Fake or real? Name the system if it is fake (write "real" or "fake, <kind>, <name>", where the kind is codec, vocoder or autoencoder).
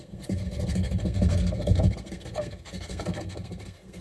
fake, codec, SNAC